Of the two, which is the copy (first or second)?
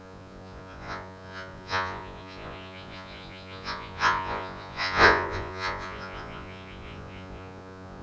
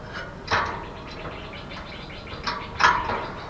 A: first